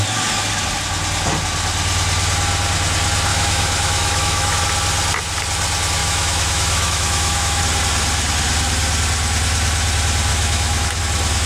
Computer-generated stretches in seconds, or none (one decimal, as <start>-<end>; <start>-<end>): 3.3-4.6; 6.0-7.6; 10.3-11.0